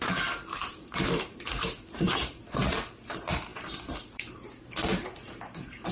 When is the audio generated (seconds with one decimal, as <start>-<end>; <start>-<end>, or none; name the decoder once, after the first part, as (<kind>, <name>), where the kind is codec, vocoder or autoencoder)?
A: 0.0-2.6 (vocoder, BigVGAN v2); 3.1-5.9